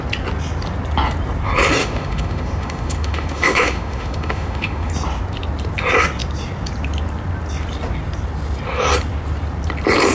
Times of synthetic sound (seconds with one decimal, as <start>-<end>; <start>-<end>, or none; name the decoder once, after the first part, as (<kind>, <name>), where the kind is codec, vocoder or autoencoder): 1.8-4.9 (autoencoder, DAC-VAE)